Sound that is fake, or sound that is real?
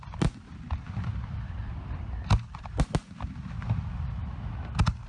real